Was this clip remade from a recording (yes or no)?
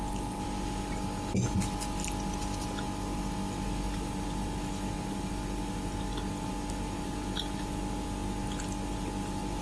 no